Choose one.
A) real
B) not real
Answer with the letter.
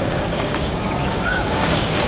B